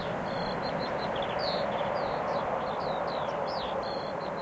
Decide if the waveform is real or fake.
real